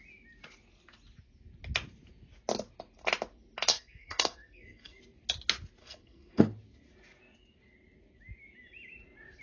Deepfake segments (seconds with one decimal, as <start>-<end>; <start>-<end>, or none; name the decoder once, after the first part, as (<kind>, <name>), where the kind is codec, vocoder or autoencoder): 3.7-5.0 (codec, SNAC); 5.8-6.4